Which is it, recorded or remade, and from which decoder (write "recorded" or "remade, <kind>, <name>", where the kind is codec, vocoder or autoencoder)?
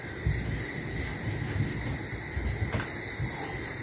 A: recorded